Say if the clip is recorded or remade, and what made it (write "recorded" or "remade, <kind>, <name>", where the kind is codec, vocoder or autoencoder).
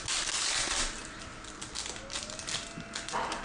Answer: recorded